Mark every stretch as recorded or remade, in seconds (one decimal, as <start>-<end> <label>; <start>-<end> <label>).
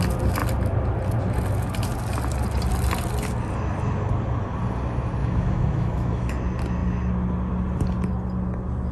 0.0-5.2 recorded; 5.2-6.3 remade; 6.3-8.9 recorded